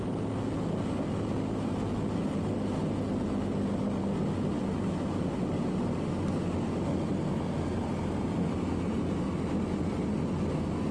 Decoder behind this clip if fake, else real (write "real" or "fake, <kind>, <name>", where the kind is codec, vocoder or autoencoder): real